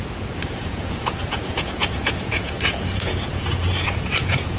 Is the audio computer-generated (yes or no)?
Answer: yes